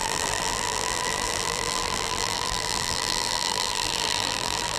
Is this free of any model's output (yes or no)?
no